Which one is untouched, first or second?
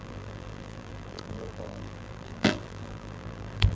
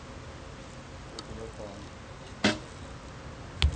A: second